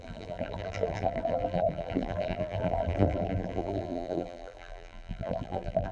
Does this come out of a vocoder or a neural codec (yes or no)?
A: yes